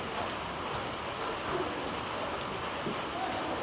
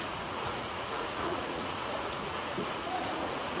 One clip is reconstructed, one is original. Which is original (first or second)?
first